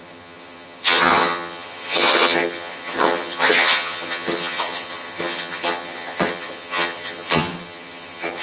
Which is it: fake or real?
fake